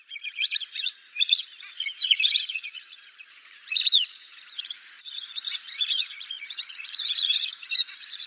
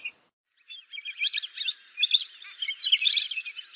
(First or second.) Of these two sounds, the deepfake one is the first